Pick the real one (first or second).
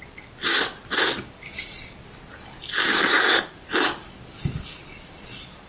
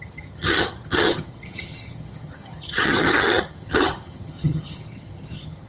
first